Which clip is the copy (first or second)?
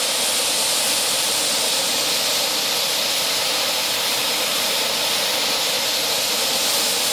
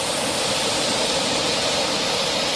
second